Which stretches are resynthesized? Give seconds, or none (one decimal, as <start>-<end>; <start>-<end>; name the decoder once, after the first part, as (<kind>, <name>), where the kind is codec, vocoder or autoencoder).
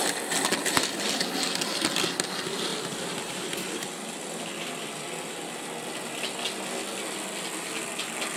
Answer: none